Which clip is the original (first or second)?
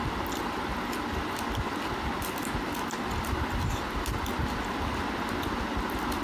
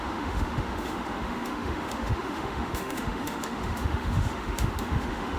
first